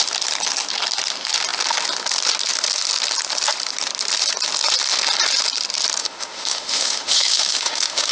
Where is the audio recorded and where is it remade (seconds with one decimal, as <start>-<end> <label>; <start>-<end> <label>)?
0.0-6.0 recorded; 6.0-8.1 remade